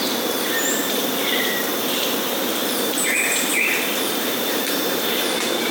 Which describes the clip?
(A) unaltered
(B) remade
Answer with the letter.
B